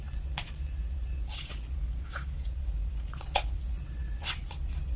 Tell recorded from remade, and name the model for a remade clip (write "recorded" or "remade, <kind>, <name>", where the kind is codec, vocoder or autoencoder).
remade, vocoder, Vocos